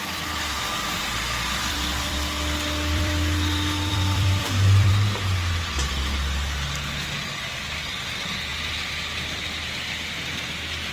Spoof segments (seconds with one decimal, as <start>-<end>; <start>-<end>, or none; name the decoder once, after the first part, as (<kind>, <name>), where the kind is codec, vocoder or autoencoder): 0.0-4.9 (vocoder, BigVGAN v2); 8.5-10.3

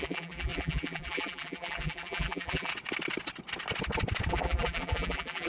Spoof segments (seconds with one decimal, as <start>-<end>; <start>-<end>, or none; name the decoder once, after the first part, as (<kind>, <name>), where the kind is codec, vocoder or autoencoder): 0.0-2.7 (vocoder, BigVGAN v2); 4.3-5.5

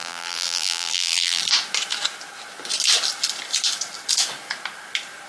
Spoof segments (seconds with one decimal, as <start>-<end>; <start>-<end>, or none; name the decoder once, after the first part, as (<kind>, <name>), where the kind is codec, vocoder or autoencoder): 0.0-1.4 (vocoder, BigVGAN v2)

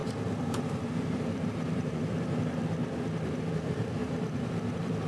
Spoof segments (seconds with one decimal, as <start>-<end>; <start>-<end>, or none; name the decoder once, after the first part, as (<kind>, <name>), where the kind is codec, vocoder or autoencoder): 0.0-2.8 (vocoder, BigVGAN v2); 3.5-5.1